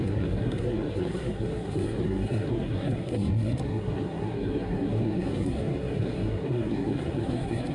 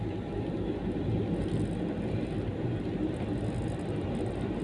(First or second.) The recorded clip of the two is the second